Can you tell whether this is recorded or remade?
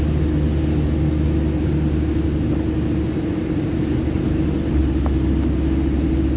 recorded